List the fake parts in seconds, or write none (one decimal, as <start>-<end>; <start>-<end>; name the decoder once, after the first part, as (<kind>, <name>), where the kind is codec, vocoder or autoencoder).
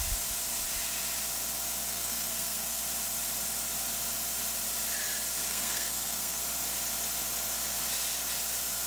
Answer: 1.9-2.8 (codec, SNAC); 5.5-6.4